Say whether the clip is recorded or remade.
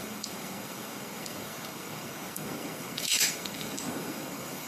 remade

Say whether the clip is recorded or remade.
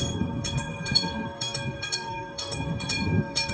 remade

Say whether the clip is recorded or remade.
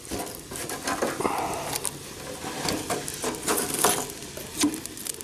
recorded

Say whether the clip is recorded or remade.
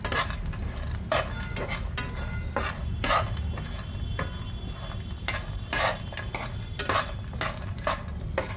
recorded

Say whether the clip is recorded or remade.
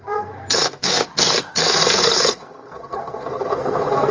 remade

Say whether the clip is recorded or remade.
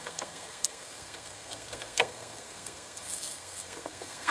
remade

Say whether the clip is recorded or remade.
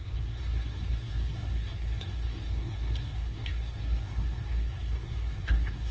remade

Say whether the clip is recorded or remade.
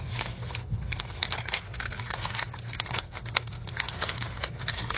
remade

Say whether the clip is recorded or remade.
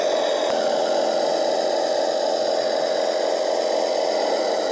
recorded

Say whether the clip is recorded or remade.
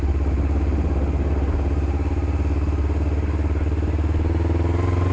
recorded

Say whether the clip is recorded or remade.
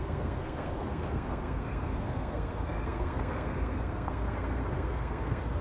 remade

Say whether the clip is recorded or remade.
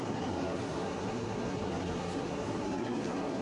remade